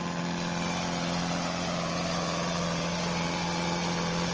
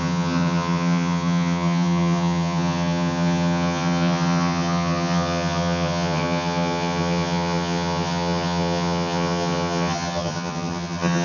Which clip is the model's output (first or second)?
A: second